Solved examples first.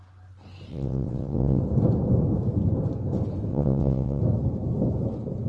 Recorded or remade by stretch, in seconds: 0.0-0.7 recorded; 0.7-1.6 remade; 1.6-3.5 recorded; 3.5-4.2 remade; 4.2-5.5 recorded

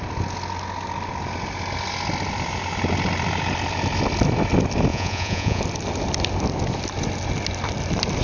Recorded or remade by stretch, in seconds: 0.0-4.9 recorded; 4.9-5.6 remade; 5.6-8.2 recorded

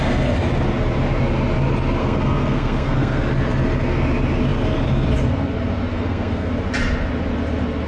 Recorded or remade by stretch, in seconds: 0.0-2.0 recorded; 2.0-3.2 remade; 3.2-5.9 recorded; 5.9-6.5 remade; 6.5-7.9 recorded

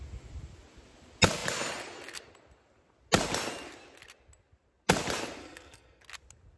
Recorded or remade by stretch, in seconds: 0.0-5.4 recorded; 5.4-6.0 remade; 6.0-6.6 recorded

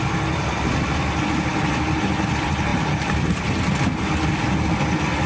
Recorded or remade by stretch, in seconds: 0.0-5.3 recorded

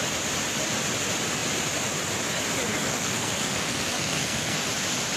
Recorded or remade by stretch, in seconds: 0.0-2.7 recorded; 2.7-4.6 remade; 4.6-5.2 recorded

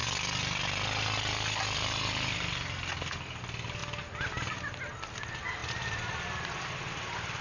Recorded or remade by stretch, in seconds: 0.0-7.4 recorded

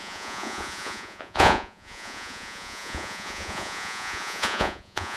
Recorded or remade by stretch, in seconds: 0.0-5.2 remade